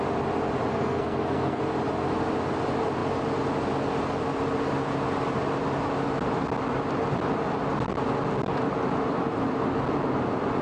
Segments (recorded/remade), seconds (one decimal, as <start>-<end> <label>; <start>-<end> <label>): 0.0-0.7 recorded; 0.7-1.6 remade; 1.6-10.6 recorded